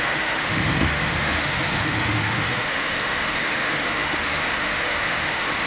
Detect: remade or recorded remade